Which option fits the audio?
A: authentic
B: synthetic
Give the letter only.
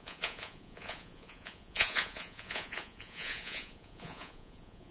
B